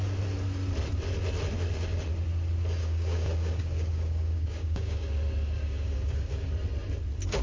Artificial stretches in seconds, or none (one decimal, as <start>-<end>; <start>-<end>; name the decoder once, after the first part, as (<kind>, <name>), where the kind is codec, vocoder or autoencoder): 2.8-5.1 (codec, DAC); 5.6-6.5